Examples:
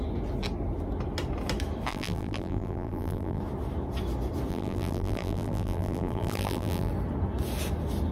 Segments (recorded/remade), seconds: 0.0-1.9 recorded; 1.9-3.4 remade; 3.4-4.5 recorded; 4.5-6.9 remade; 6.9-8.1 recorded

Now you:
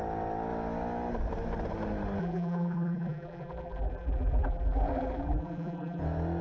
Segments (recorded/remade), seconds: 0.0-2.2 recorded; 2.2-6.0 remade; 6.0-6.4 recorded